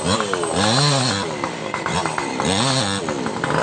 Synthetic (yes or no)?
no